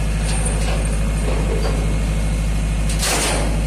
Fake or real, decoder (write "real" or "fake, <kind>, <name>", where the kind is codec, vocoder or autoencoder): real